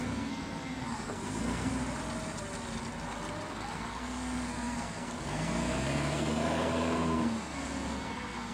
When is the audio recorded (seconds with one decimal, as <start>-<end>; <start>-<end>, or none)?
1.7-3.5